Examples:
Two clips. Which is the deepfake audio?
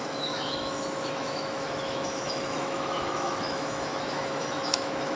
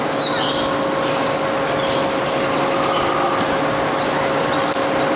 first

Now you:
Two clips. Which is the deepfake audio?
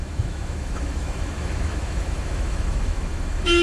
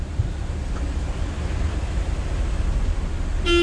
first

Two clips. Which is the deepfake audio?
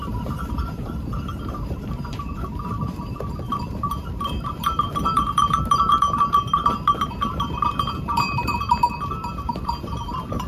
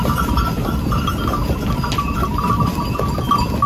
first